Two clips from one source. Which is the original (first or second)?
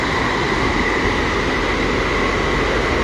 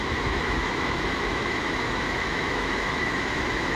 first